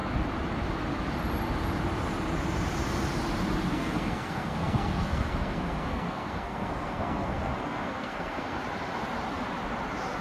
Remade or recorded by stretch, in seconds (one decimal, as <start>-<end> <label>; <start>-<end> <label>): 0.0-3.7 recorded; 3.7-8.6 remade; 8.6-10.2 recorded